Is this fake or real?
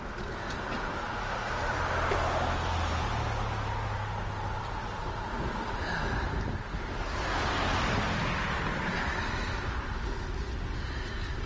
real